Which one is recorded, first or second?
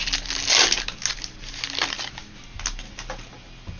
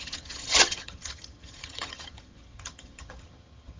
first